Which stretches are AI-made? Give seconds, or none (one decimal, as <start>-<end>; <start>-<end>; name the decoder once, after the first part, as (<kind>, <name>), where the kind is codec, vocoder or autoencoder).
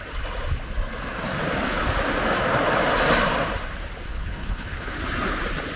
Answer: 4.1-5.0 (codec, HILCodec)